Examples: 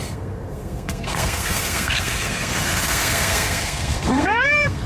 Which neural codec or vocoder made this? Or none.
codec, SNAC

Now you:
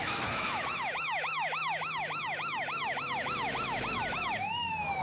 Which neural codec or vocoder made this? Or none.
autoencoder, DAC-VAE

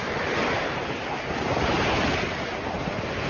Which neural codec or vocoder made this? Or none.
none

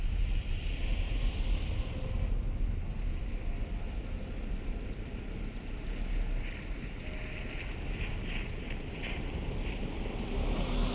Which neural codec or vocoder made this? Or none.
none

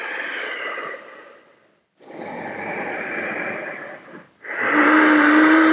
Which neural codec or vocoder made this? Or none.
none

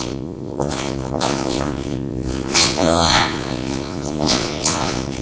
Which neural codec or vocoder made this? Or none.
vocoder, Vocos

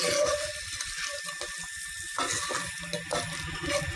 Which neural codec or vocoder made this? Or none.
none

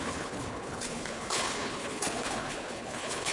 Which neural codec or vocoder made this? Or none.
codec, HILCodec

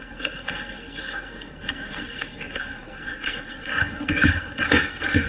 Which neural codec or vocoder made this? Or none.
codec, SNAC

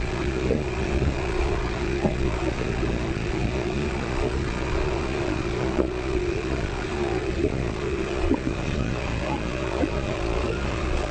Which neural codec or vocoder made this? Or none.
vocoder, Vocos